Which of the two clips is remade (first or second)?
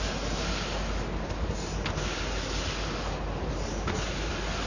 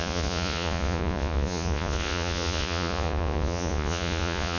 second